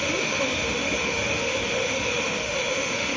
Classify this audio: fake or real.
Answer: fake